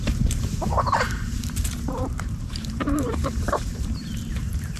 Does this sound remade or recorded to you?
remade